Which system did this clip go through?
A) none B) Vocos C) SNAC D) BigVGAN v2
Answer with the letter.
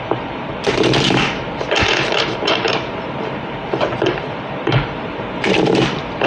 D